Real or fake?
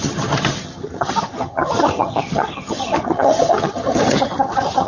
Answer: fake